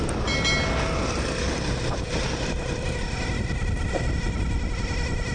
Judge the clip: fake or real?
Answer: real